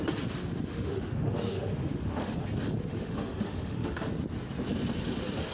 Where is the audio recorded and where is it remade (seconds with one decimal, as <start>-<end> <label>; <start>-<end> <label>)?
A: 0.0-0.7 recorded; 0.7-2.3 remade; 2.3-2.9 recorded; 2.9-4.1 remade; 4.1-5.5 recorded